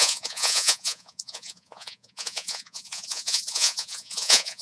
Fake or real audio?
fake